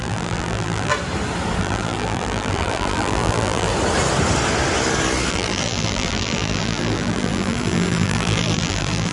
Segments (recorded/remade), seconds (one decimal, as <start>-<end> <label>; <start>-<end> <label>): 0.0-0.9 remade; 0.9-1.6 recorded; 1.6-3.7 remade; 3.7-5.3 recorded; 5.3-9.1 remade

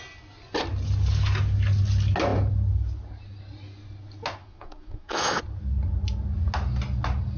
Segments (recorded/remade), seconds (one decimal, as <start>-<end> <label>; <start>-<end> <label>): 0.0-4.4 recorded; 4.4-5.4 remade; 5.4-7.4 recorded